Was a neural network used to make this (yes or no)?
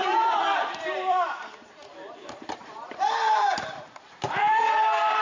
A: yes